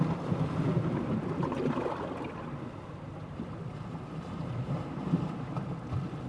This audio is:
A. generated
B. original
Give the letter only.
B